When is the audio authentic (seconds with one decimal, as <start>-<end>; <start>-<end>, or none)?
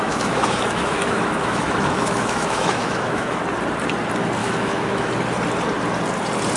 3.4-4.4; 5.1-6.6